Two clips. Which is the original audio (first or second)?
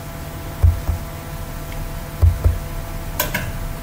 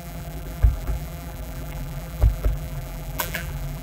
first